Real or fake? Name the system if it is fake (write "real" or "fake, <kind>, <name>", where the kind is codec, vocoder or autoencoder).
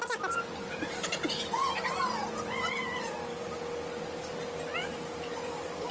real